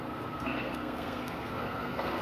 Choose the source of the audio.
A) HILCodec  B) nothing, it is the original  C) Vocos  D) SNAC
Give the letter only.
D